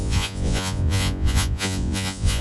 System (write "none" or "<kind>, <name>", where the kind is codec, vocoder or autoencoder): vocoder, Vocos